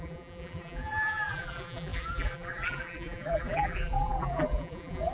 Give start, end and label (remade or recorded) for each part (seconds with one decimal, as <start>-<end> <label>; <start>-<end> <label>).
0.0-5.1 remade